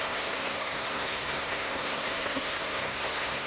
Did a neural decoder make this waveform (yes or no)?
yes